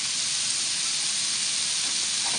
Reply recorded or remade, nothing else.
recorded